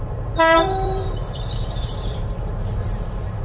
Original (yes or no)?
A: no